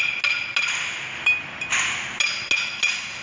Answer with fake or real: real